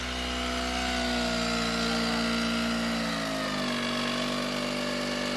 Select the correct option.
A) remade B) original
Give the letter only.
B